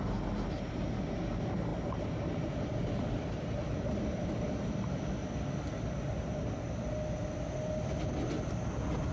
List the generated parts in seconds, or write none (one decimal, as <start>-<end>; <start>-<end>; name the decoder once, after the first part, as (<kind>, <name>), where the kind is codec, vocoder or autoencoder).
none